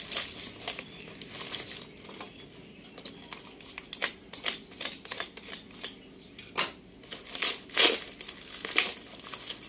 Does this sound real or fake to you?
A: real